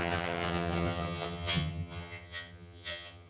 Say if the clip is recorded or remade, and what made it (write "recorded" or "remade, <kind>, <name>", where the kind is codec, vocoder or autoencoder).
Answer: remade, vocoder, HiFi-GAN